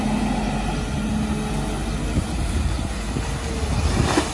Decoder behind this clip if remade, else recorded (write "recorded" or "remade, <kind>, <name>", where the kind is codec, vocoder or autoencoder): recorded